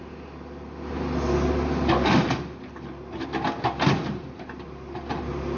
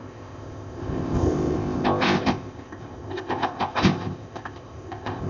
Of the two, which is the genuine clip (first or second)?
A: first